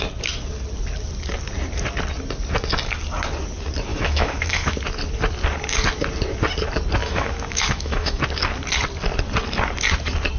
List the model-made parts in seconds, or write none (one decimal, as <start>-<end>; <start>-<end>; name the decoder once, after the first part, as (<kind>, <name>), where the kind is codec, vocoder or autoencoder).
3.9-4.8 (autoencoder, DAC-VAE); 7.0-8.2